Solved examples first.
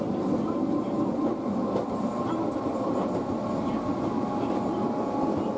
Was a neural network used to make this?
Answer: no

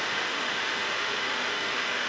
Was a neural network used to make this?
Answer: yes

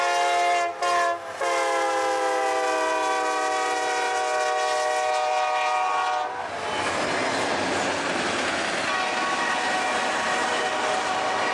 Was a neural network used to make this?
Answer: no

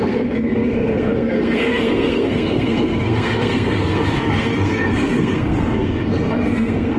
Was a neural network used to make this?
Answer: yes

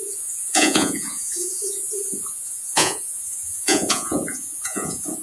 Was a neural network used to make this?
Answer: yes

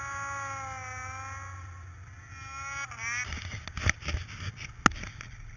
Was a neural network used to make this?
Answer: no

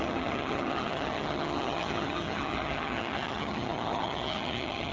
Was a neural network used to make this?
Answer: yes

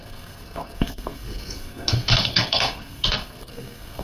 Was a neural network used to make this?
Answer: yes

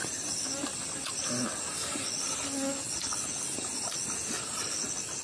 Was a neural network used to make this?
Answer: no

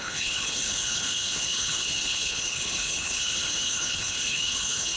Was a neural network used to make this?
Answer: yes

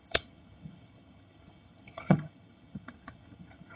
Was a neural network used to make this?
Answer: yes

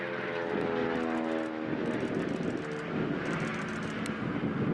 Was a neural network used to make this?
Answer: no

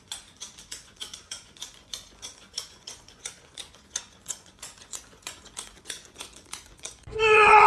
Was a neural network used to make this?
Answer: yes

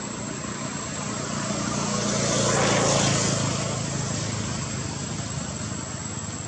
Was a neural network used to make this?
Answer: no